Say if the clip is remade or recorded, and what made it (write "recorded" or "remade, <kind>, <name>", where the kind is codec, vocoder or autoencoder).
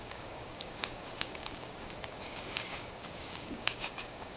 remade, codec, DAC